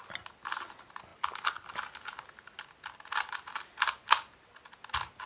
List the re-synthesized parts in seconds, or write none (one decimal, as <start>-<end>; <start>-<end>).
none